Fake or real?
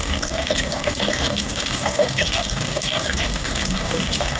fake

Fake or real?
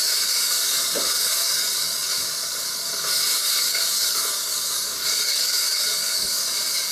fake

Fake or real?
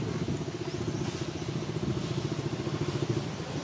real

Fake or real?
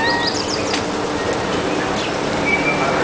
real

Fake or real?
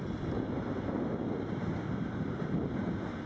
real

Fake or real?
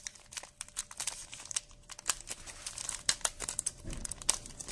real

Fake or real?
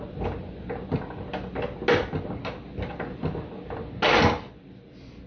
real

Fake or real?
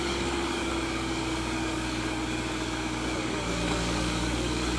fake